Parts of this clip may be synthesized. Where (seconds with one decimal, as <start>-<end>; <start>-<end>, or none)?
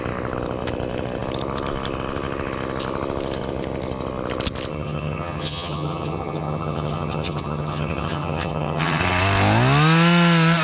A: 4.7-9.0